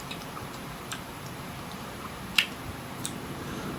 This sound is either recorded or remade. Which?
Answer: remade